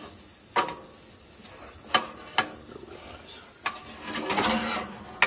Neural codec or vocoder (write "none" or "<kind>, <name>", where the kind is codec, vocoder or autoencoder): none